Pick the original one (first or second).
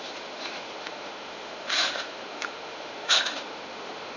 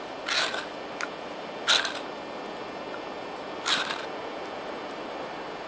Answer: second